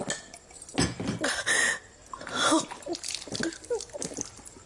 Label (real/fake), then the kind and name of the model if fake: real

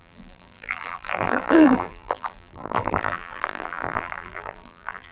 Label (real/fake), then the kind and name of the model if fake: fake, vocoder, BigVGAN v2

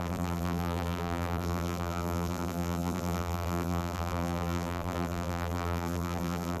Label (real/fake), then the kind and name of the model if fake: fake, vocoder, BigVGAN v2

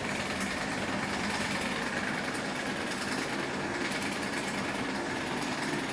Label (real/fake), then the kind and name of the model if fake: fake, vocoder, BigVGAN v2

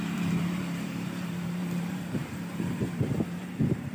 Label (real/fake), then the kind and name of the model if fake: fake, vocoder, BigVGAN v2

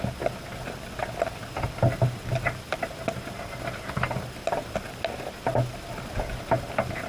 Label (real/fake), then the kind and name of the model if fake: real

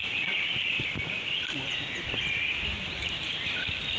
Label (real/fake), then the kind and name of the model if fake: fake, vocoder, BigVGAN v2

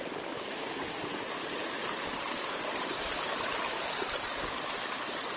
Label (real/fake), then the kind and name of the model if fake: real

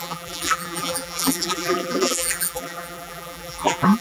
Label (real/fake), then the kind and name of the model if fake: fake, vocoder, BigVGAN v2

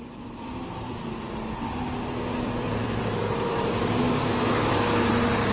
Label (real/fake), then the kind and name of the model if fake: fake, vocoder, BigVGAN v2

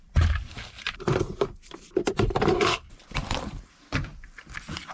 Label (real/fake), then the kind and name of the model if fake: fake, vocoder, BigVGAN v2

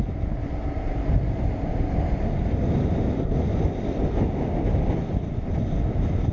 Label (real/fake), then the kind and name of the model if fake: real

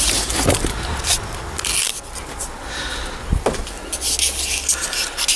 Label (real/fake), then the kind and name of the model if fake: real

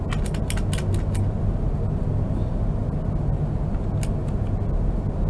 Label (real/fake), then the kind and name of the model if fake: real